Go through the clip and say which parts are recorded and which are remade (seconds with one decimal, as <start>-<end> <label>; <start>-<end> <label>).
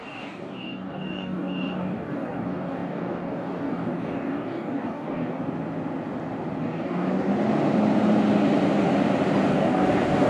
0.0-5.4 remade; 5.4-6.6 recorded; 6.6-7.3 remade; 7.3-9.5 recorded; 9.5-10.3 remade